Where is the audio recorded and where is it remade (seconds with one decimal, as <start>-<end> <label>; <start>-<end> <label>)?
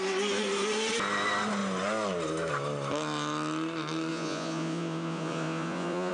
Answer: 0.0-4.1 recorded; 4.1-6.1 remade